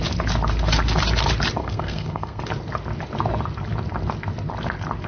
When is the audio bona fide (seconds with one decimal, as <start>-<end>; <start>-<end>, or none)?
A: 0.0-1.6; 2.4-5.1